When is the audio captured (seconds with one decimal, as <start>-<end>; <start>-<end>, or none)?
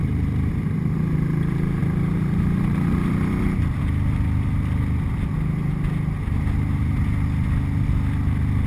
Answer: 1.0-1.8; 3.8-8.7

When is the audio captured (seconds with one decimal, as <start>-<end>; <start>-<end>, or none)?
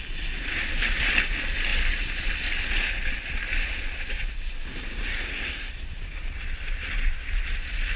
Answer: 0.0-5.1; 5.7-8.0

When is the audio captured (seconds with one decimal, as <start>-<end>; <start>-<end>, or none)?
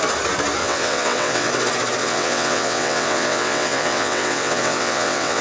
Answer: 0.0-0.6; 1.5-2.0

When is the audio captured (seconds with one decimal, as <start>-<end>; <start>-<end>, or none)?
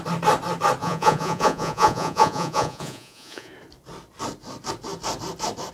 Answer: 0.0-0.8; 3.5-5.7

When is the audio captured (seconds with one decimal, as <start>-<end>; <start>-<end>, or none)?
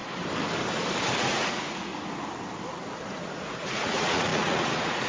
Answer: 0.0-1.2; 1.9-3.1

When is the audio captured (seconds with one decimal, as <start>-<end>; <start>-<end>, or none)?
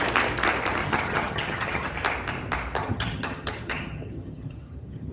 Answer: 0.0-0.8; 1.9-2.8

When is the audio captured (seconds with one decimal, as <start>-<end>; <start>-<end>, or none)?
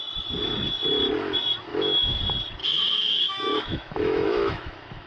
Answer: 0.0-1.7; 2.2-2.6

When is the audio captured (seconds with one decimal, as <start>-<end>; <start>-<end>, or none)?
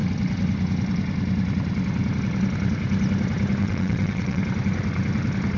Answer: 0.0-3.6; 4.4-5.6